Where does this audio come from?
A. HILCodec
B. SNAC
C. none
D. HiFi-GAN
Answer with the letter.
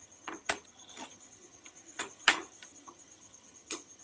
D